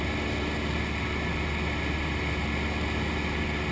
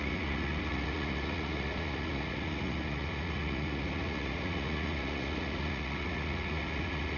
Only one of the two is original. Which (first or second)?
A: first